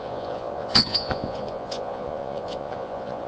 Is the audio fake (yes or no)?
yes